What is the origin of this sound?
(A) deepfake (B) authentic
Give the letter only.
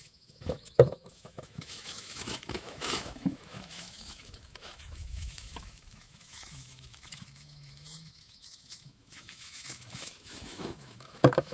A